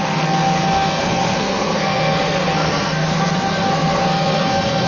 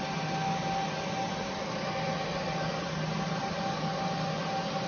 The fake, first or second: first